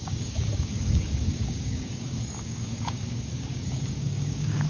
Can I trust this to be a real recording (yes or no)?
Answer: no